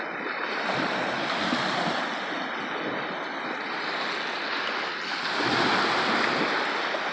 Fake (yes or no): no